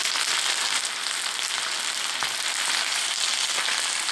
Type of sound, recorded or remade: recorded